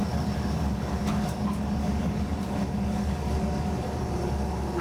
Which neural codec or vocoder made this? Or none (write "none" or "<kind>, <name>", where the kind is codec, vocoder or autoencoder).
codec, DAC